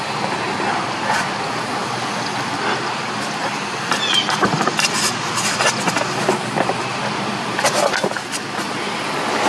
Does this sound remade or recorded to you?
recorded